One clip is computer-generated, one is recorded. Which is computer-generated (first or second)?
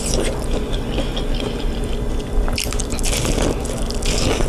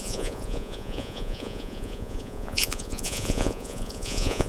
second